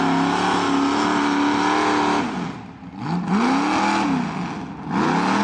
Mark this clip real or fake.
real